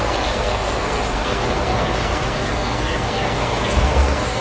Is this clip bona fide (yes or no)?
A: no